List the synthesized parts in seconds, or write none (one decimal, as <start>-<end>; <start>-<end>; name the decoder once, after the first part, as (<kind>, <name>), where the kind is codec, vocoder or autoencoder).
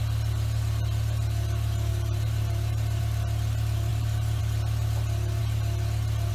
1.9-3.0 (vocoder, BigVGAN v2); 3.9-4.4